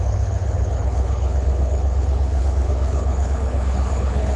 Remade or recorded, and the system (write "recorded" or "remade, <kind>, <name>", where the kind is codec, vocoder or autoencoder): remade, codec, HILCodec